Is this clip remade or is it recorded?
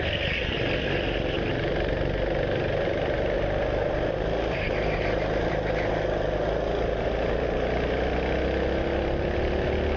recorded